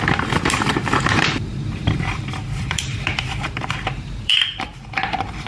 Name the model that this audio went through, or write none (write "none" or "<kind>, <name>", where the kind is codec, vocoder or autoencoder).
vocoder, BigVGAN v2